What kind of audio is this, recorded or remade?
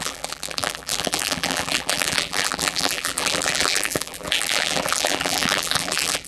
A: remade